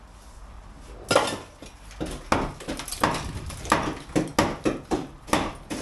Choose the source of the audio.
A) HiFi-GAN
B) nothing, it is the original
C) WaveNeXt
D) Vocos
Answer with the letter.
B